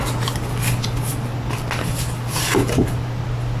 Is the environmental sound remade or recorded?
recorded